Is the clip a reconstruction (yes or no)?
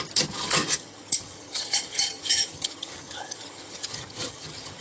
yes